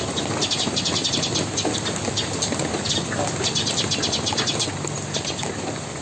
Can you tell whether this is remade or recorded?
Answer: recorded